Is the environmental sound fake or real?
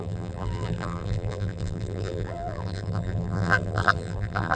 fake